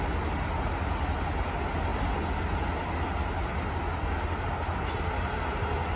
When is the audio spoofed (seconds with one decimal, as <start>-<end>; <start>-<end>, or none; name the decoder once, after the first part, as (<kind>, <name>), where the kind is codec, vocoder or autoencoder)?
none